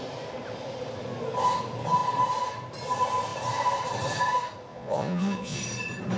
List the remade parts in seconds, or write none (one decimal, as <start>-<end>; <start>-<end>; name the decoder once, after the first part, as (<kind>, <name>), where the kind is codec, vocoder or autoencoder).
4.7-5.6 (vocoder, Vocos)

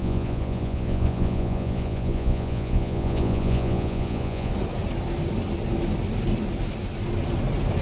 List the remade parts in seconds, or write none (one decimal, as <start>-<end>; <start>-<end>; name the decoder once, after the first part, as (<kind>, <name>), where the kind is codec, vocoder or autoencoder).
0.0-4.5 (vocoder, Vocos)

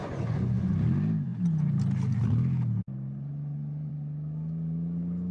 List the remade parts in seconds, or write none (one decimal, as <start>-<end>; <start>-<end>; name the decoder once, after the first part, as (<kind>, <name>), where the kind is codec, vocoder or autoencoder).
0.0-0.7 (vocoder, Vocos)

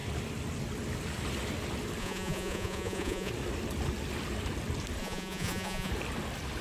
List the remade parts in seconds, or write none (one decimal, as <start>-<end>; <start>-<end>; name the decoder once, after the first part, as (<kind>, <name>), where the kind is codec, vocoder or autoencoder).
2.0-3.3 (vocoder, Vocos); 5.0-5.9

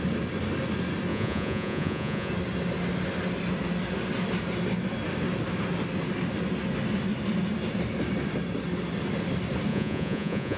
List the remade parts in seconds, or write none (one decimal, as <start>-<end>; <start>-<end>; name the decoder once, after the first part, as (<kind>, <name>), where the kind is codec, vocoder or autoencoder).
1.1-2.3 (vocoder, Vocos); 9.7-10.6